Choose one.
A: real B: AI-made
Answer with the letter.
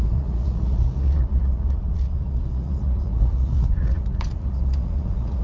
B